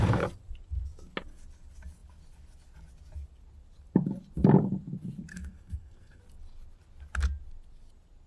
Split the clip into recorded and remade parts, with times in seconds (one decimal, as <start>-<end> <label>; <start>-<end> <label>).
0.0-5.3 recorded; 5.3-6.2 remade; 6.2-8.3 recorded